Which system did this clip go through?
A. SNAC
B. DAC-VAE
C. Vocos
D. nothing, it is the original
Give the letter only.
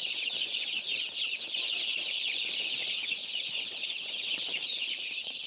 C